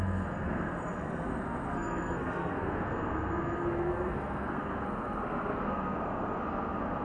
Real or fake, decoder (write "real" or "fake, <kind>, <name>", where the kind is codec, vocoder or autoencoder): fake, codec, SNAC